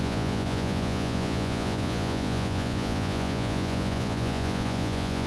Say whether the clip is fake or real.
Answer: fake